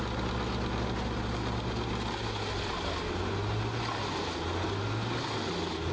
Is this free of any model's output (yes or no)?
yes